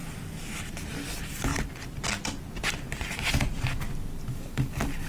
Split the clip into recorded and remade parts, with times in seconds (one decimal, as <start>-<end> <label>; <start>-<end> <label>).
0.0-4.3 recorded; 4.3-5.1 remade